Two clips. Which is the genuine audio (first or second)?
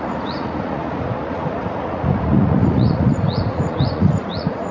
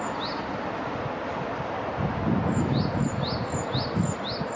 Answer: second